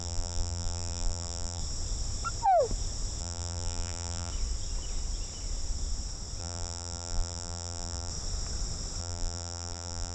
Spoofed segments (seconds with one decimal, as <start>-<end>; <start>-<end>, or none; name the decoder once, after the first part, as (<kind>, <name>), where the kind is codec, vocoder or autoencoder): 0.0-1.6 (vocoder, BigVGAN v2); 3.2-4.3; 6.4-8.1; 9.0-10.1